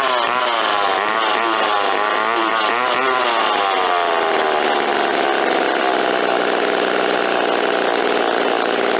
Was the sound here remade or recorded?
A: recorded